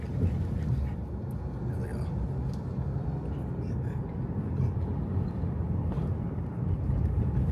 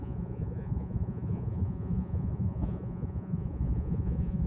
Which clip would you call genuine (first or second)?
first